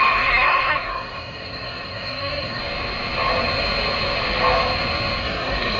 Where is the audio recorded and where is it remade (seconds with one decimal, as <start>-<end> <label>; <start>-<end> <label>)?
0.0-2.6 remade; 2.6-5.2 recorded; 5.2-5.8 remade